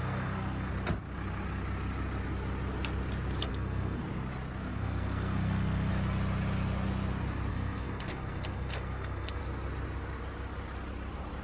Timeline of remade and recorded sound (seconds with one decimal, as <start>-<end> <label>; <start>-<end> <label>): 0.0-0.7 remade; 0.7-3.5 recorded; 3.5-4.0 remade; 4.0-4.7 recorded; 4.7-5.9 remade; 5.9-7.5 recorded; 7.5-9.4 remade; 9.4-11.4 recorded